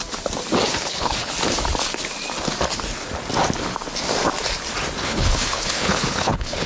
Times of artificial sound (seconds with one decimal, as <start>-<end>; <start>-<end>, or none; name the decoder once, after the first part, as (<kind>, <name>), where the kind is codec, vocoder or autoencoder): 0.7-1.3 (codec, HILCodec); 5.0-6.7